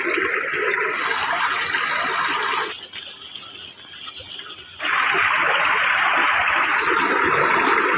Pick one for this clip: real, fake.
real